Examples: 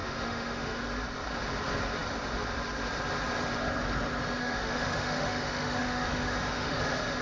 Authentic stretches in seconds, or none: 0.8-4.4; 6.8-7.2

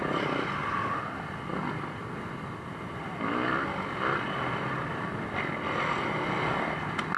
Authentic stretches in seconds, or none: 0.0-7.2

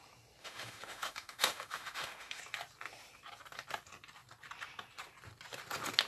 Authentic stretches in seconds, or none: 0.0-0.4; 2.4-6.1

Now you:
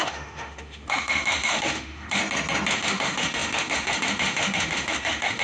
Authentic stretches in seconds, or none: 2.2-2.7

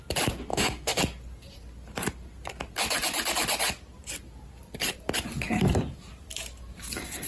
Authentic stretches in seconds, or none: 0.0-0.5; 1.0-7.3

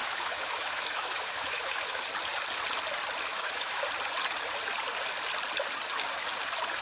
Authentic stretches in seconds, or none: 2.0-3.3; 3.8-6.8

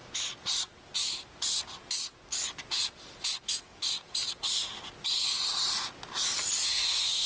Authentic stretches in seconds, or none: 0.0-3.4; 3.8-6.6